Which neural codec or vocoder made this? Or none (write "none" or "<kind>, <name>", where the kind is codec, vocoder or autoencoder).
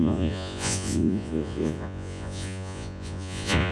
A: vocoder, Vocos